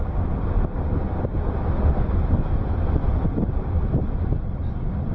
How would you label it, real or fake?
real